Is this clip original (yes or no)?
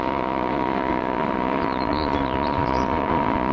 no